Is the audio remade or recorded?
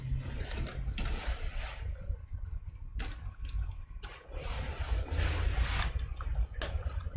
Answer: recorded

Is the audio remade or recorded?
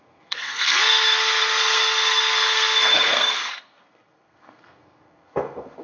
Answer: remade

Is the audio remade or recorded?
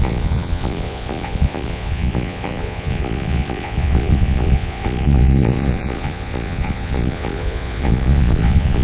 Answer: remade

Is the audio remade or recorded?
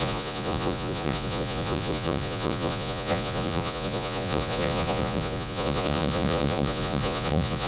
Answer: remade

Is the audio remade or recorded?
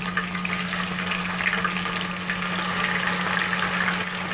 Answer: recorded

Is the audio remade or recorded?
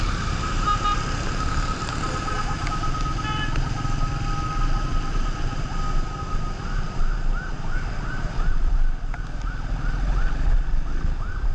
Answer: recorded